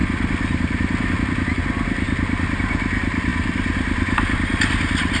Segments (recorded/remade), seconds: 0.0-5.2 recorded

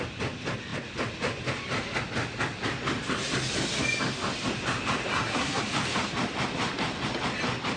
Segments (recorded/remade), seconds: 0.0-5.1 recorded; 5.1-5.6 remade; 5.6-7.8 recorded

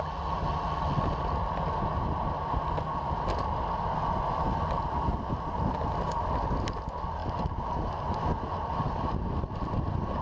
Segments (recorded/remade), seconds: 0.0-10.2 recorded